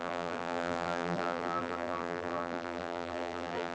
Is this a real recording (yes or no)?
no